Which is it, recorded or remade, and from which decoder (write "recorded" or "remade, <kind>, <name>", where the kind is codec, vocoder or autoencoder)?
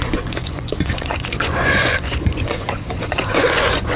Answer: remade, vocoder, Vocos